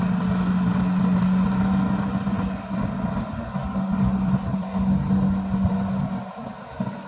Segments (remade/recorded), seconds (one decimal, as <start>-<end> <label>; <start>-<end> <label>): 0.0-7.1 recorded